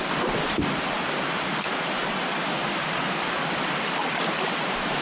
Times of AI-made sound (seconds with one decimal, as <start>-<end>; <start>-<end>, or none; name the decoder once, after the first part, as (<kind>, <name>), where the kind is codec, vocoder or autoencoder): 2.0-5.0 (vocoder, BigVGAN v2)